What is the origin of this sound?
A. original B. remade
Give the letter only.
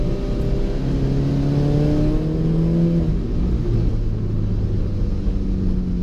A